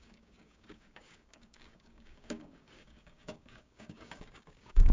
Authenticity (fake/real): fake